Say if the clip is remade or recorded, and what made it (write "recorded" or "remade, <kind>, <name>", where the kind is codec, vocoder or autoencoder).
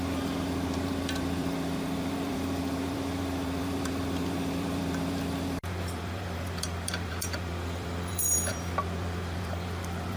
remade, vocoder, BigVGAN v2